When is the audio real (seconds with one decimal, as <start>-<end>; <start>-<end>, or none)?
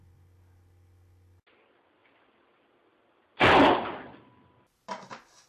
0.0-5.5